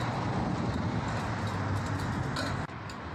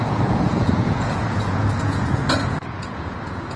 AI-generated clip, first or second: second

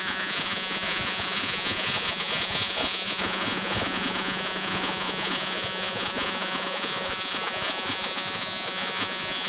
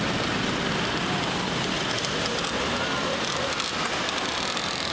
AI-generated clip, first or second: first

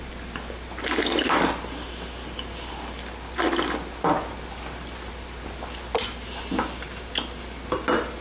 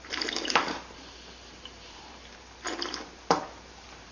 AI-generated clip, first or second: second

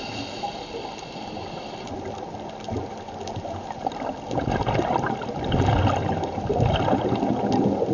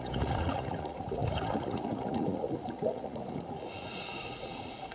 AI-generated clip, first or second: second